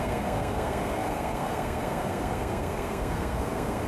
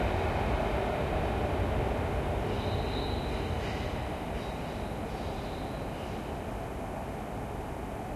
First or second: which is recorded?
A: second